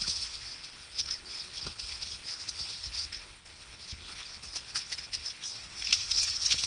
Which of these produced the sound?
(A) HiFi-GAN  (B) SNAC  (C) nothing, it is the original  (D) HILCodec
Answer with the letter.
D